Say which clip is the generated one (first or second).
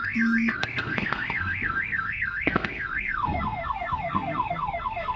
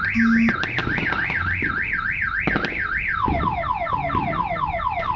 first